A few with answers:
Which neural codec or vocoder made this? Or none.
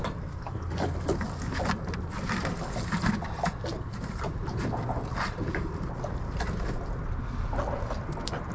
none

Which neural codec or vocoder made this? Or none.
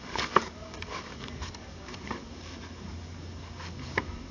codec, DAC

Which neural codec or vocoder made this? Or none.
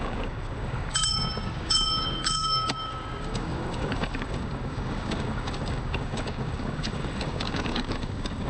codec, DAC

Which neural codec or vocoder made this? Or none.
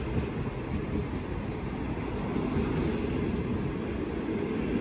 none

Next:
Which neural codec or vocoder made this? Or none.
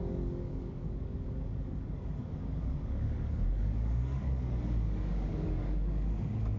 codec, DAC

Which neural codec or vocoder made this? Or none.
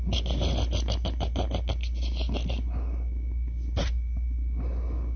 none